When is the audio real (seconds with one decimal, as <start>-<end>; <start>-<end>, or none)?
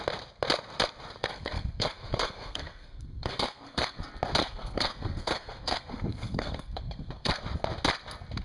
0.0-1.3; 4.0-4.4; 7.4-8.4